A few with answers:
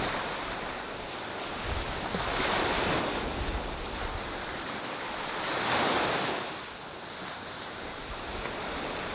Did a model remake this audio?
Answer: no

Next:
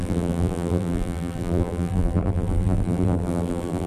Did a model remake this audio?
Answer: yes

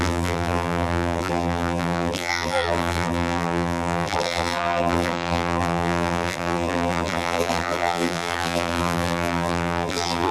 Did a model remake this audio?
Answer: yes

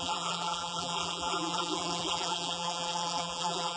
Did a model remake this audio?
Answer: yes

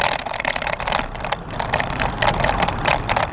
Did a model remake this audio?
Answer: yes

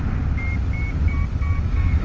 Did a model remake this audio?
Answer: no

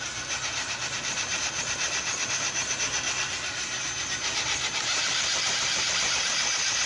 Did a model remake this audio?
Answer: no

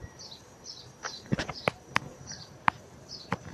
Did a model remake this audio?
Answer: yes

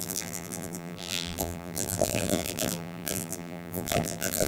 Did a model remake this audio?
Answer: yes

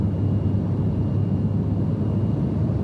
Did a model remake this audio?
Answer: no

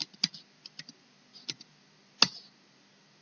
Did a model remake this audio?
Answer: no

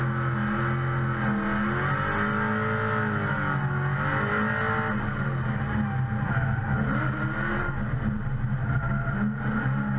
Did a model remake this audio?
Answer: no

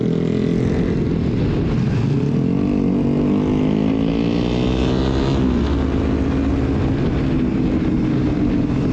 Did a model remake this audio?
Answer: no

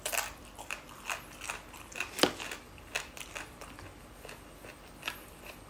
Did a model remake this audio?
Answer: no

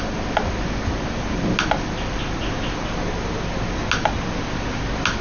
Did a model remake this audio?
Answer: no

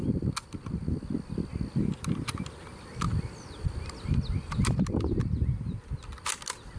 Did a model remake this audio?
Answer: no